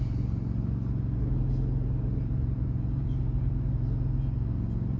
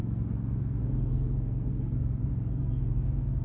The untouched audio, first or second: first